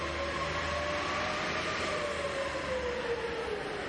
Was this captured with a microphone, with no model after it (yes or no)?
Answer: yes